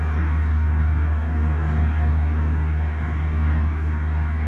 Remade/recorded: remade